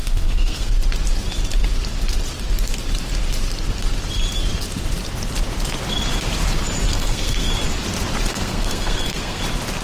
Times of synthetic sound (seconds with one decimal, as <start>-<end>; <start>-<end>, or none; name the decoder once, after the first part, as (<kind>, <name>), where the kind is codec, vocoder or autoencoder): 0.0-0.7 (codec, SNAC); 6.9-7.5; 8.3-9.4

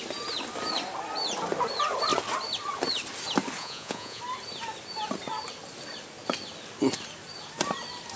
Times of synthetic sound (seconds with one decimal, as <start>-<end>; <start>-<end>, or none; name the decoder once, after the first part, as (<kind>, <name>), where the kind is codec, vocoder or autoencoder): 3.6-4.2 (vocoder, Vocos)

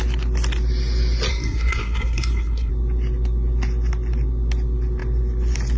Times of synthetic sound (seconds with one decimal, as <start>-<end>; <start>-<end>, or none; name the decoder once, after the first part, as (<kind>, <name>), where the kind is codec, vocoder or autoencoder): 1.3-2.7 (codec, SNAC)

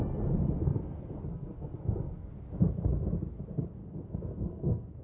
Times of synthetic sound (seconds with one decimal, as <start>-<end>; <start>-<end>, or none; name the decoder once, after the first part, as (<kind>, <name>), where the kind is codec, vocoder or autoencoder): 1.3-2.3 (codec, SNAC); 3.8-5.0